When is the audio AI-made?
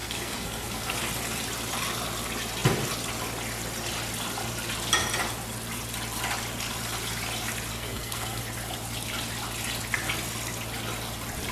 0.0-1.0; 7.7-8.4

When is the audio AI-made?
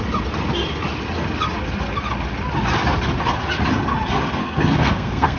4.4-5.4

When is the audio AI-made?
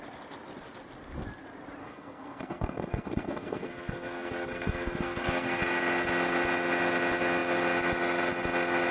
1.8-5.6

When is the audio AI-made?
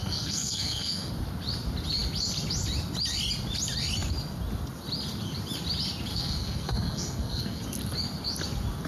0.0-1.1; 6.1-7.6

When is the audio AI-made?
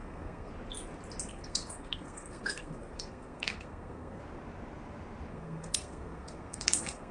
0.0-0.5; 1.3-4.2; 5.3-7.1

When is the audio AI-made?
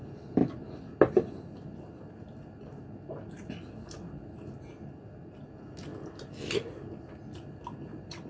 none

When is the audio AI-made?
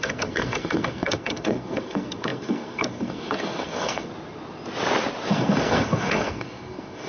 0.0-4.1; 5.3-7.1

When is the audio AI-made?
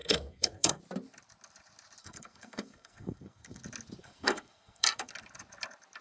0.0-0.8; 2.0-3.6; 4.0-5.1